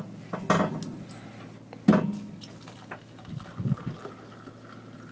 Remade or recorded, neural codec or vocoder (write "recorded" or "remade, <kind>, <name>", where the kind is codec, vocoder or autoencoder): recorded